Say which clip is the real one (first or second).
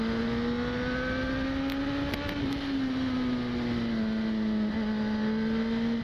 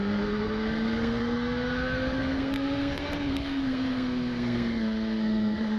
first